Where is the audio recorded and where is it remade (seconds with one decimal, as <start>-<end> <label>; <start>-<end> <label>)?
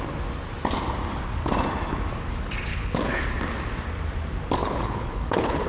0.0-2.7 recorded; 2.7-3.3 remade; 3.3-4.6 recorded; 4.6-5.7 remade